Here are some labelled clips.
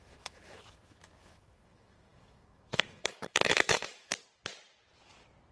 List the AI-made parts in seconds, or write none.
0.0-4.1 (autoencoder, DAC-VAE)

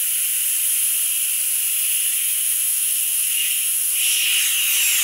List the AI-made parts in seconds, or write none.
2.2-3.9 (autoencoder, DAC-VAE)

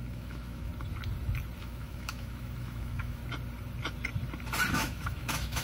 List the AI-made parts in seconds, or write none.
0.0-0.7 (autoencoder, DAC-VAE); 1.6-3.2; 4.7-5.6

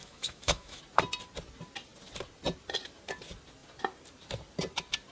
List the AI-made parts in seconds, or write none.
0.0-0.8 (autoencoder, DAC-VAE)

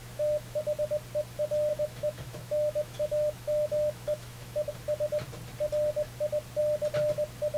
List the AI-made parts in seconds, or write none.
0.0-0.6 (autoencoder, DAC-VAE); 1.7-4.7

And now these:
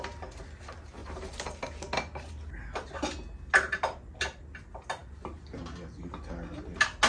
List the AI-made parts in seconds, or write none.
none

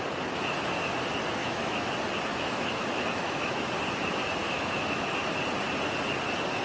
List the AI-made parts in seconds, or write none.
1.4-1.9 (autoencoder, DAC-VAE); 2.3-3.7; 4.4-5.3